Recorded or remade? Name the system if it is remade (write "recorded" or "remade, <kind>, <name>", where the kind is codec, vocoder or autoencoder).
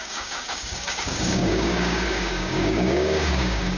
remade, codec, DAC